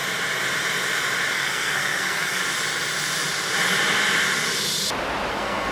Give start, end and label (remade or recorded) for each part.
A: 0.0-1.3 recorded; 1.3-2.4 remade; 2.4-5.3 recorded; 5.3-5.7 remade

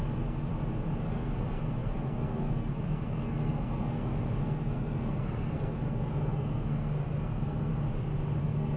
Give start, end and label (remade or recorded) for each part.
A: 0.0-0.5 remade; 0.5-1.0 recorded; 1.0-7.7 remade; 7.7-8.4 recorded; 8.4-8.8 remade

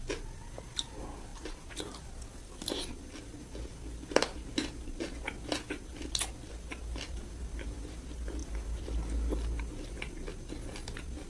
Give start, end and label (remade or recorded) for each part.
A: 0.0-11.3 recorded

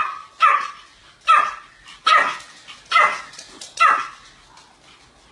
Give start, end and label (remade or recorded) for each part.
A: 0.0-5.3 recorded

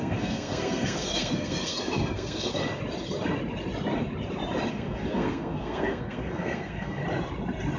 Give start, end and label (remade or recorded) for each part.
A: 0.0-2.6 remade; 2.6-4.7 recorded; 4.7-7.0 remade; 7.0-7.8 recorded